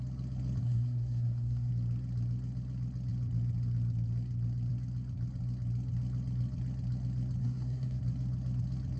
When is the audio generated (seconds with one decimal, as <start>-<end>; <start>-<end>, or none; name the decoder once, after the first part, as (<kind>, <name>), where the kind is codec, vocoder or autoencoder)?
0.6-1.7 (codec, SNAC); 7.4-8.0